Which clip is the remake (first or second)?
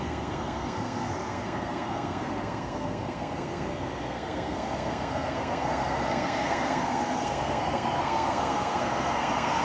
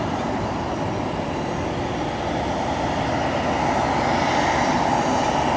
first